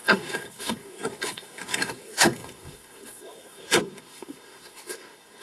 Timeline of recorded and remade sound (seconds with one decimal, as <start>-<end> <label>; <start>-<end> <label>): 0.0-5.4 remade